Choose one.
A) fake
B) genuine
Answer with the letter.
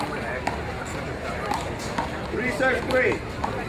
B